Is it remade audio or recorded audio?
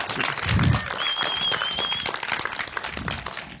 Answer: recorded